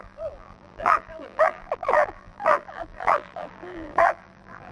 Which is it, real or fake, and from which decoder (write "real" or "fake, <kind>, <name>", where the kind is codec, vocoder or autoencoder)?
fake, vocoder, BigVGAN v2